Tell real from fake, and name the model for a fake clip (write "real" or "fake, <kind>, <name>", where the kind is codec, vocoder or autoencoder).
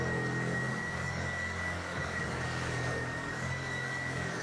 fake, codec, DAC